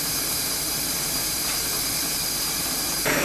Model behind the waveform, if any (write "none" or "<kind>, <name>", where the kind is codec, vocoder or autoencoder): vocoder, BigVGAN v2